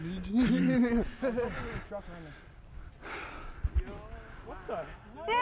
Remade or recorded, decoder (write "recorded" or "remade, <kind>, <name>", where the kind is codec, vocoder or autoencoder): recorded